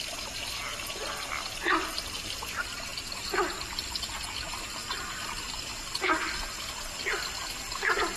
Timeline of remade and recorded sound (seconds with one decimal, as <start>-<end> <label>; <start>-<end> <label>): 0.0-8.2 recorded